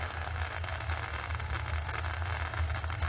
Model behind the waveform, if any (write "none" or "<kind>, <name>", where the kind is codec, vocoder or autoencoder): none